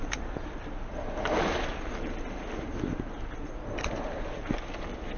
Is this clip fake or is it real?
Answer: real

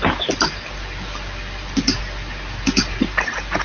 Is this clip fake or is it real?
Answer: real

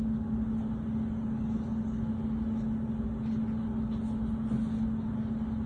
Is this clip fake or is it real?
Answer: real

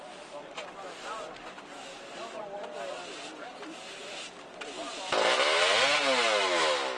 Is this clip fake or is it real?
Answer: real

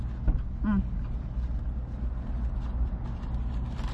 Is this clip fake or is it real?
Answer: real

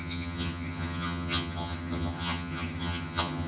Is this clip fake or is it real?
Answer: fake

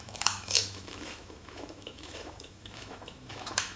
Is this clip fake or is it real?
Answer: fake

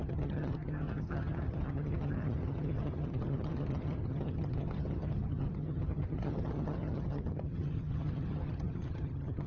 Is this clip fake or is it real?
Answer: fake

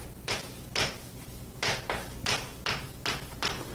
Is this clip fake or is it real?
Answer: real